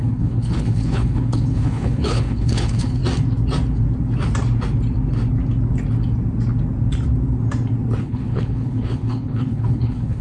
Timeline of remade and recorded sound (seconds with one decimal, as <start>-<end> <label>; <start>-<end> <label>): 0.0-3.0 remade; 3.0-8.0 recorded; 8.0-10.2 remade